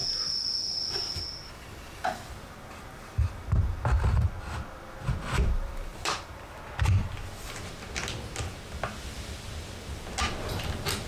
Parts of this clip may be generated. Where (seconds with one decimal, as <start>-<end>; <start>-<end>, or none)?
0.0-2.3; 5.9-7.8